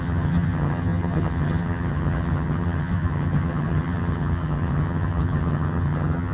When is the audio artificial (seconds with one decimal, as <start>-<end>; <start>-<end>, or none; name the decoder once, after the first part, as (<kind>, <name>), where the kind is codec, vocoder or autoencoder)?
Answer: 0.0-6.3 (vocoder, HiFi-GAN)

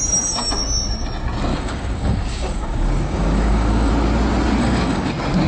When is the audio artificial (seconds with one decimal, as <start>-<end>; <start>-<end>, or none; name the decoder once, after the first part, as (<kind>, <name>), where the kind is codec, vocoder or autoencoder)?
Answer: 1.5-3.9 (codec, DAC); 4.6-5.1